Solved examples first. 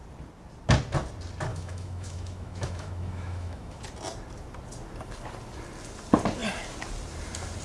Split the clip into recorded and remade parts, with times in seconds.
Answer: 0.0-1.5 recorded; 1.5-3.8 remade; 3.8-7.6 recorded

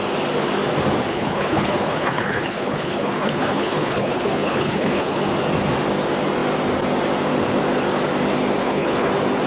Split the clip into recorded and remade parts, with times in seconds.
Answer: 0.0-1.1 recorded; 1.1-5.2 remade; 5.2-8.6 recorded; 8.6-9.1 remade; 9.1-9.5 recorded

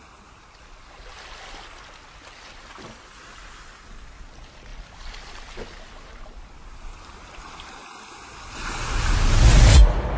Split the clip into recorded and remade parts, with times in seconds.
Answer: 0.0-10.2 recorded

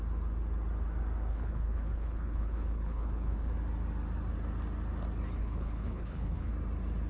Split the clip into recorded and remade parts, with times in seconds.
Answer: 0.0-1.3 recorded; 1.3-3.5 remade; 3.5-5.4 recorded; 5.4-6.5 remade; 6.5-7.1 recorded

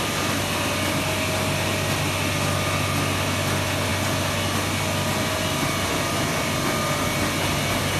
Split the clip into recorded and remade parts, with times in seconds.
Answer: 0.0-8.0 recorded

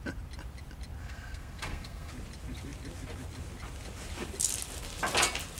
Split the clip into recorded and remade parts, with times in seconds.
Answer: 0.0-1.0 recorded; 1.0-2.1 remade; 2.1-5.6 recorded

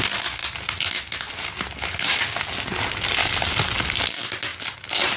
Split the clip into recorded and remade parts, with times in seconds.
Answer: 0.0-5.2 recorded

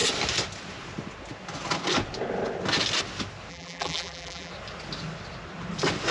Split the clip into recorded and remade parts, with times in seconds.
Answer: 0.0-3.5 recorded; 3.5-4.5 remade; 4.5-6.1 recorded